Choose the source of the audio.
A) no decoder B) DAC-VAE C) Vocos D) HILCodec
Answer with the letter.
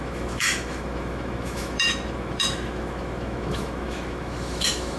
B